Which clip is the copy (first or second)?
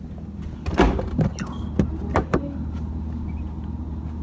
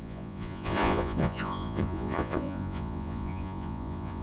second